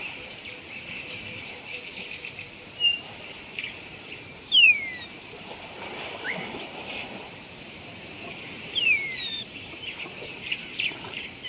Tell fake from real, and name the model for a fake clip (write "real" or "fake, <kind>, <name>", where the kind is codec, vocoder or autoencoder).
fake, vocoder, BigVGAN v2